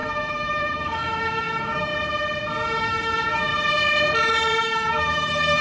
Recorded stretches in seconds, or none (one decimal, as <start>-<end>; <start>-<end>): 1.9-2.8; 3.5-4.6